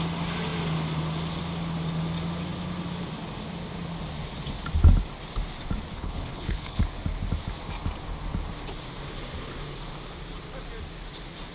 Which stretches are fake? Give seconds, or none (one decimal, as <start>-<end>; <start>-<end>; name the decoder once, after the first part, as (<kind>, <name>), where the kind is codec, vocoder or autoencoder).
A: 5.9-6.8 (codec, HILCodec)